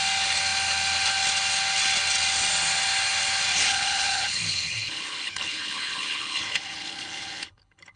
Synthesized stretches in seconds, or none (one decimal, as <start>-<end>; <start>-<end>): 3.5-8.0